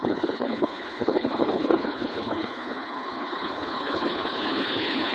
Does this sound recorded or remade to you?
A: remade